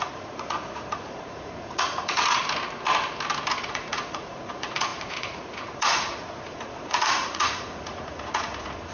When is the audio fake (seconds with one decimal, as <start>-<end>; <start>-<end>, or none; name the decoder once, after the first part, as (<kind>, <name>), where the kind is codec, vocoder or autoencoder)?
0.0-2.4 (vocoder, Vocos); 3.6-8.9